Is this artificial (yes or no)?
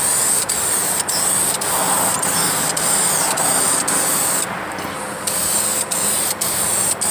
no